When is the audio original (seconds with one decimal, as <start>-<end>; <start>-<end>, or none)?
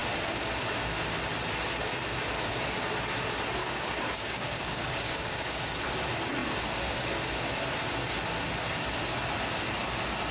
0.0-3.6; 5.6-10.3